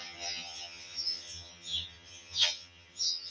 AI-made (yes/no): yes